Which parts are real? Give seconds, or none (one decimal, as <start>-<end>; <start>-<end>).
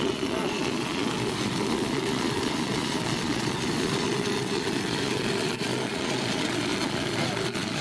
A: none